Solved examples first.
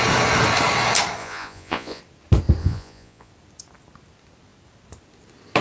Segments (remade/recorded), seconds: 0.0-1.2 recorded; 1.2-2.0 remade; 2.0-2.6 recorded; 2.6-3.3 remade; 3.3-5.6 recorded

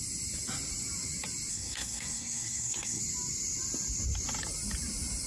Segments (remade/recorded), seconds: 0.0-1.5 recorded; 1.5-3.0 remade; 3.0-5.3 recorded

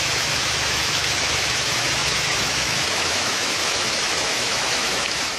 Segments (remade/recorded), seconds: 0.0-5.4 remade

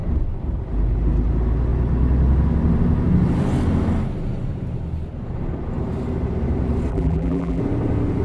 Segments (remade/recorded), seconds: 0.0-6.9 recorded; 6.9-7.6 remade; 7.6-8.2 recorded

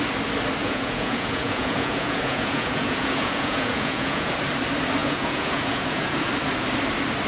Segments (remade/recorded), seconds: 0.0-0.6 recorded; 0.6-4.3 remade; 4.3-5.0 recorded; 5.0-6.3 remade; 6.3-7.3 recorded

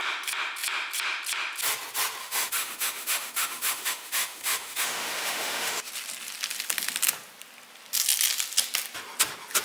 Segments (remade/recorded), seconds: 0.0-2.2 recorded; 2.2-5.9 remade; 5.9-9.6 recorded

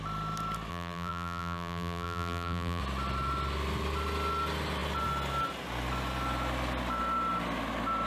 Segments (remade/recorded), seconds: 0.0-0.7 recorded; 0.7-2.8 remade; 2.8-8.1 recorded